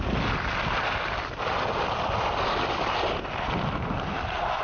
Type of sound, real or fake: real